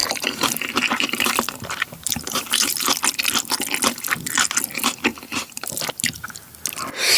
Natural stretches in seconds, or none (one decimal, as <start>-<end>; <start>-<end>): 2.9-5.1; 5.8-7.2